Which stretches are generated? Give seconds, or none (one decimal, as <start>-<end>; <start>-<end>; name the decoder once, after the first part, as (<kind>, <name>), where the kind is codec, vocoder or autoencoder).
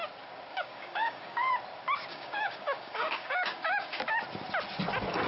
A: 0.5-1.5 (codec, DAC); 2.1-4.0